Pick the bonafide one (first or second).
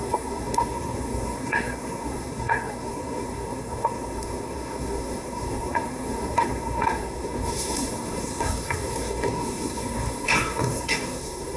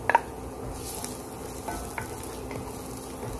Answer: second